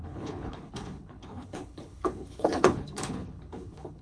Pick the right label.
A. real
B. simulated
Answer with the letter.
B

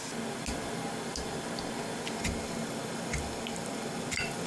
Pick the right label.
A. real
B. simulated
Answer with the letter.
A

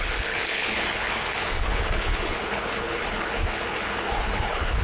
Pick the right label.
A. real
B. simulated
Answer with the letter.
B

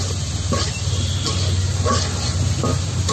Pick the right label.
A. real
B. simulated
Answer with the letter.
A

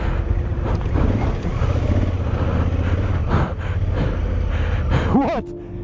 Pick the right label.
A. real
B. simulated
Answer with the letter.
A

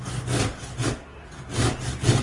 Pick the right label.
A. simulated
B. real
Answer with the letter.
B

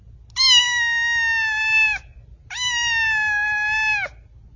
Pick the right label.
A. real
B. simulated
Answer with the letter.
A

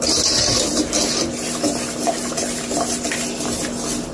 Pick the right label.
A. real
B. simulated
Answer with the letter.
A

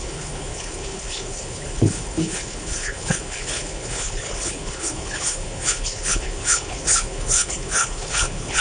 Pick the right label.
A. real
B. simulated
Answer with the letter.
B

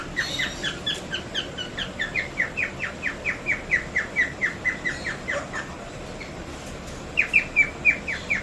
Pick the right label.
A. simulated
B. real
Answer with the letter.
B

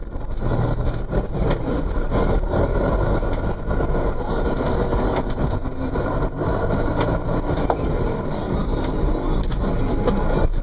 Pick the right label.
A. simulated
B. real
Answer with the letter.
B